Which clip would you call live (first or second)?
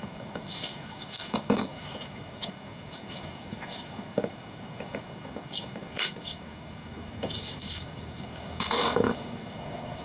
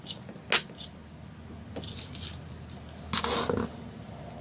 second